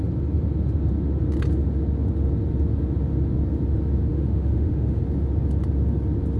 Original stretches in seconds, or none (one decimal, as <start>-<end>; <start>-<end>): 0.0-4.1; 5.0-6.4